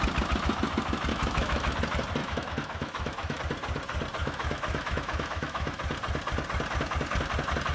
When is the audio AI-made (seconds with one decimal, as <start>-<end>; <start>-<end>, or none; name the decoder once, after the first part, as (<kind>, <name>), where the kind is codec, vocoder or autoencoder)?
1.1-1.7 (autoencoder, DAC-VAE); 2.2-3.4; 4.2-5.8